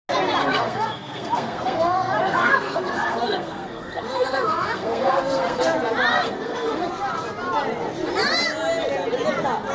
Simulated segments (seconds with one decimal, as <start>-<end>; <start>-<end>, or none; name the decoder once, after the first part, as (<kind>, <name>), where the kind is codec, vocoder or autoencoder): 0.4-5.6 (codec, SNAC); 6.1-6.9